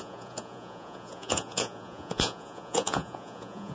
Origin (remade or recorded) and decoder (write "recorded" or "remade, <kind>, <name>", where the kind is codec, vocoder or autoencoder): remade, vocoder, Vocos